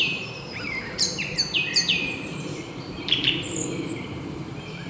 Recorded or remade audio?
remade